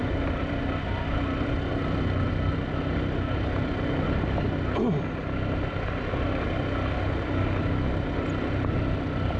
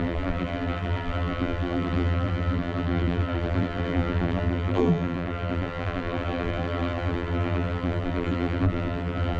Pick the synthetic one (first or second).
second